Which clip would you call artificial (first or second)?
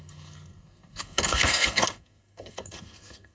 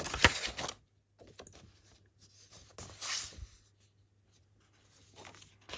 first